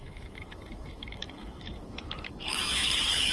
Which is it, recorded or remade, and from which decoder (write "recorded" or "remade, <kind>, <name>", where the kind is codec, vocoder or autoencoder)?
remade, autoencoder, DAC-VAE